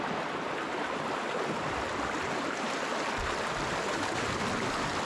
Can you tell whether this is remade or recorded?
recorded